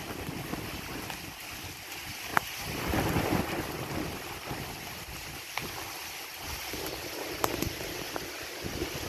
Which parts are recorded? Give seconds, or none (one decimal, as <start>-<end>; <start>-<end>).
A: 0.0-2.3; 3.0-9.1